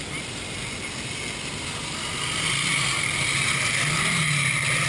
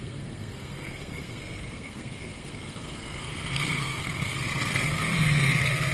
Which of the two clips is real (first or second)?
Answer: first